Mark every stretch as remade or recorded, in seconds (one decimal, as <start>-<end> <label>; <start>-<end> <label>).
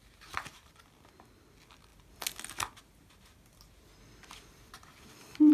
0.0-5.5 recorded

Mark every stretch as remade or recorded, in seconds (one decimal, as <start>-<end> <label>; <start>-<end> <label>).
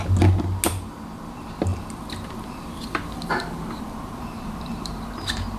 0.0-1.7 recorded; 1.7-5.1 remade; 5.1-5.6 recorded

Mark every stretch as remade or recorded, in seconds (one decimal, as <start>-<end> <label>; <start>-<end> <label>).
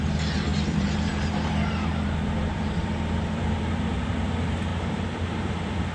0.0-0.5 recorded; 0.5-3.6 remade; 3.6-4.7 recorded; 4.7-5.5 remade; 5.5-5.9 recorded